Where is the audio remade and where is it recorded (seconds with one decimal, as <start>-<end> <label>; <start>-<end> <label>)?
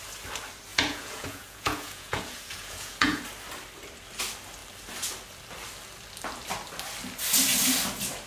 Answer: 0.0-0.7 recorded; 0.7-3.2 remade; 3.2-8.3 recorded